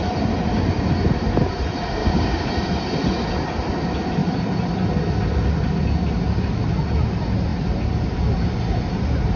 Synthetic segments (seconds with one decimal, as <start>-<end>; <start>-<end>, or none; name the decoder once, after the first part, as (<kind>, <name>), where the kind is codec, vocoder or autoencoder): 2.0-2.5 (codec, DAC)